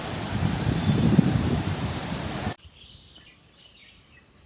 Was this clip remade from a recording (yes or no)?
yes